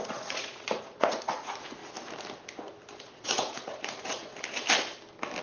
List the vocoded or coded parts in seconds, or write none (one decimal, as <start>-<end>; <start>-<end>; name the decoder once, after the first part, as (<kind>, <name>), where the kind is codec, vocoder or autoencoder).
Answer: 0.0-1.8 (vocoder, Vocos); 3.0-4.3

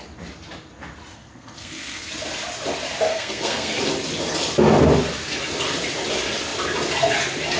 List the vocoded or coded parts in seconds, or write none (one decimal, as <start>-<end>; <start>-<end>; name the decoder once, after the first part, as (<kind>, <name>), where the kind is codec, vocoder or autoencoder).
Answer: 1.1-2.1 (codec, SNAC); 3.1-3.8